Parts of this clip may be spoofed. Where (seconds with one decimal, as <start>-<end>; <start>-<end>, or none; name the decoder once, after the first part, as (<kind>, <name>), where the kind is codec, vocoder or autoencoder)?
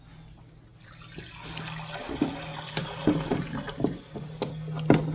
2.5-4.5 (vocoder, BigVGAN v2)